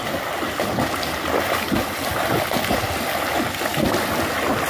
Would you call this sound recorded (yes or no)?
yes